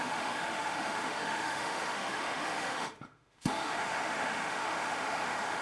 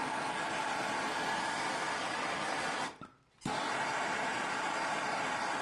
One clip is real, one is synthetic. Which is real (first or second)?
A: second